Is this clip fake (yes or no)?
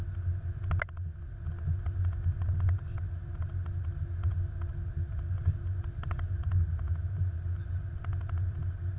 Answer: no